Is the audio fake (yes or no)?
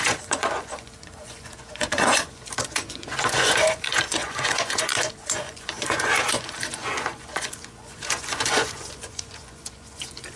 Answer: yes